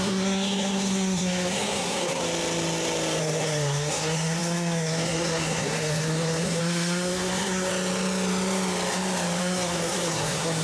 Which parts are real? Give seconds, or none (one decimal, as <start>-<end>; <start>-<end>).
2.2-3.2; 7.7-9.4